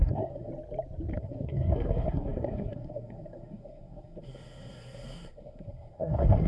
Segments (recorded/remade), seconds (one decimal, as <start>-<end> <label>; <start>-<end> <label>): 0.0-0.5 remade; 0.5-1.2 recorded; 1.2-6.5 remade